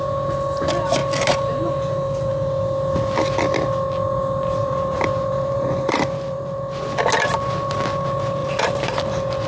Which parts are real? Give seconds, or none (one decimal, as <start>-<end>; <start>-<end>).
0.0-4.6; 6.5-8.4; 9.0-9.5